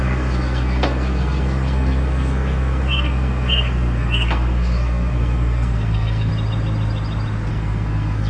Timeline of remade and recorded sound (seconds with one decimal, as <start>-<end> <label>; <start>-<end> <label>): 0.0-6.3 remade; 6.3-7.5 recorded; 7.5-8.3 remade